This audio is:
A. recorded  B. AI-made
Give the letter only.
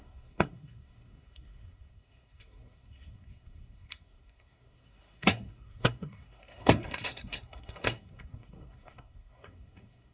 B